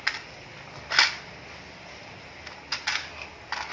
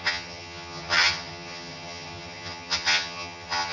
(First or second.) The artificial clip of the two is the second